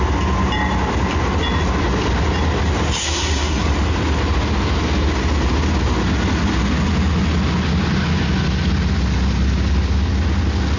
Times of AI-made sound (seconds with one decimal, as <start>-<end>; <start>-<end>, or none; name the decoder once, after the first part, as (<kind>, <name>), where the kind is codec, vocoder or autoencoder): 3.0-3.7 (codec, SNAC)